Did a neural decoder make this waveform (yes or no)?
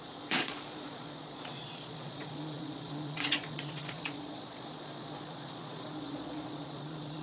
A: yes